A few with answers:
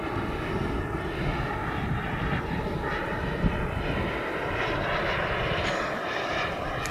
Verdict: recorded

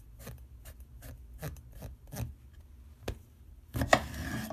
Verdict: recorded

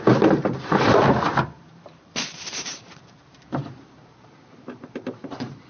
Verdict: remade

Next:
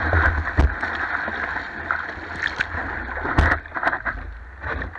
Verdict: recorded